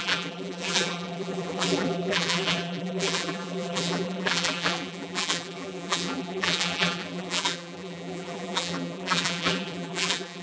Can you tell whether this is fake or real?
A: fake